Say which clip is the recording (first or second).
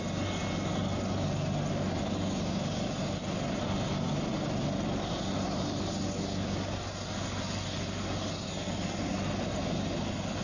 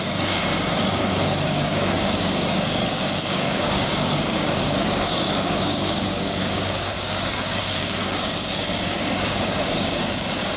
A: first